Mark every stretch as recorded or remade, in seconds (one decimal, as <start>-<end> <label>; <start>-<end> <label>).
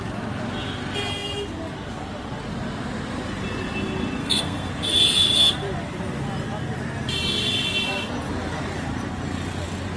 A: 0.0-4.2 recorded; 4.2-4.7 remade; 4.7-10.0 recorded